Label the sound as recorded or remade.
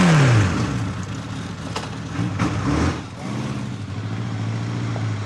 recorded